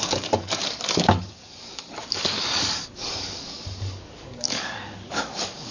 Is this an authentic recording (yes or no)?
no